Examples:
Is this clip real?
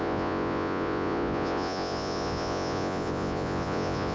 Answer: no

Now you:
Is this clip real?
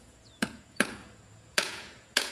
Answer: no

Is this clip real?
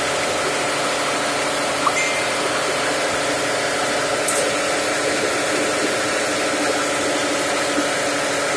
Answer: yes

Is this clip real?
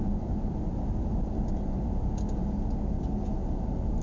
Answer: yes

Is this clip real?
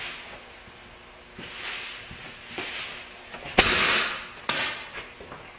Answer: yes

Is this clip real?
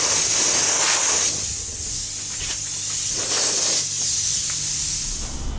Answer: yes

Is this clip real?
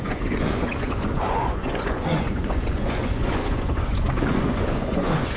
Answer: no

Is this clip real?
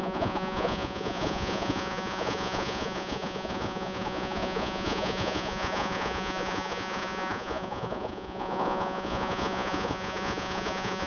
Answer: no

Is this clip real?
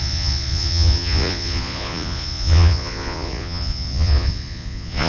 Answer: no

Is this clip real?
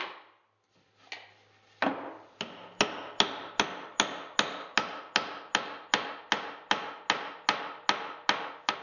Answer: yes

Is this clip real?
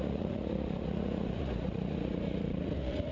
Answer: no